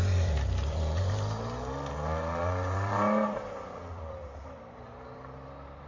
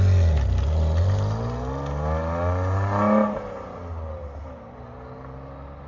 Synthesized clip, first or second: first